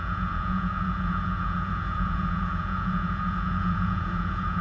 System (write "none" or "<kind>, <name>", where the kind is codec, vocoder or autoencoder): vocoder, Vocos